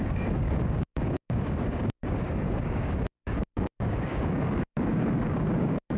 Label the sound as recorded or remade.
remade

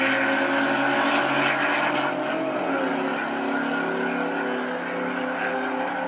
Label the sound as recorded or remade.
recorded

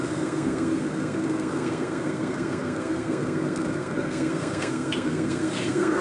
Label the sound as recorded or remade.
remade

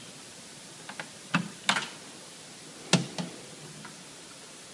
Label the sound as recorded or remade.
recorded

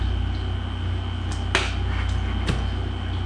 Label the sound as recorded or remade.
recorded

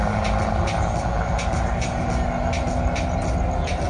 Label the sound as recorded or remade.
recorded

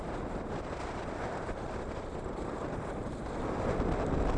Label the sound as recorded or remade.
recorded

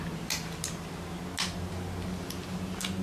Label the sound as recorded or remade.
recorded